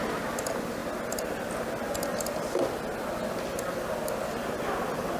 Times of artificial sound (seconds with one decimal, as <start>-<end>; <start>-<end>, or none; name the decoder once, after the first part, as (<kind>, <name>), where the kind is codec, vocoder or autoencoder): none